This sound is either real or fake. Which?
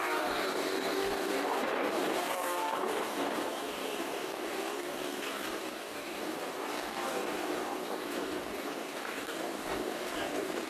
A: fake